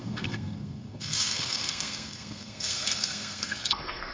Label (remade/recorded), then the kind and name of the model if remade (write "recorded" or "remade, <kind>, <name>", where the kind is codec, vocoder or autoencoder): remade, codec, SNAC